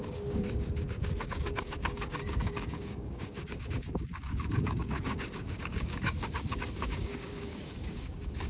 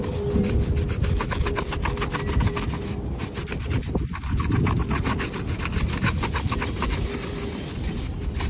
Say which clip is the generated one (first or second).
first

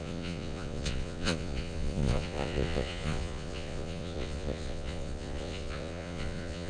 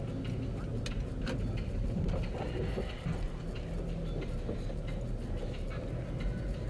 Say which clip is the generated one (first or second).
first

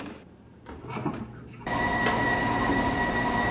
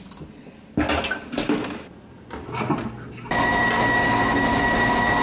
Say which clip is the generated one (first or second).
first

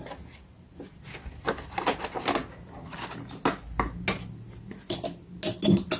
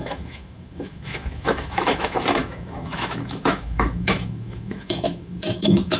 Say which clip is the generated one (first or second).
second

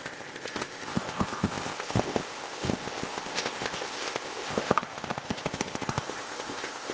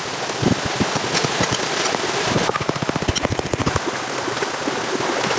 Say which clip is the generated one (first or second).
first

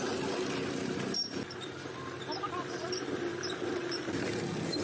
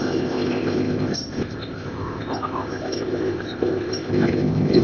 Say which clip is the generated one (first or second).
second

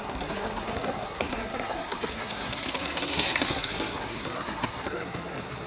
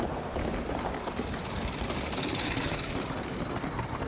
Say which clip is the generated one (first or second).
first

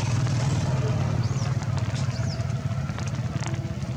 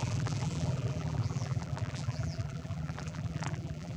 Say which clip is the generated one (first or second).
second